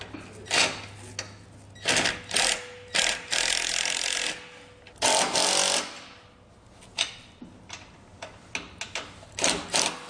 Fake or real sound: real